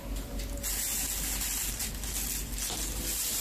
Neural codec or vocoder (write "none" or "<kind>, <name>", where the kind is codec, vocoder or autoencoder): none